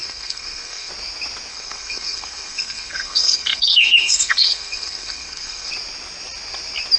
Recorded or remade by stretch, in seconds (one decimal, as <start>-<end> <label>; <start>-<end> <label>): 0.0-0.9 remade; 0.9-1.5 recorded; 1.5-5.7 remade; 5.7-7.0 recorded